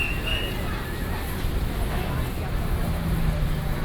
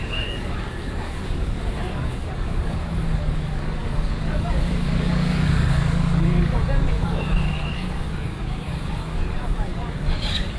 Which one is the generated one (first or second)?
second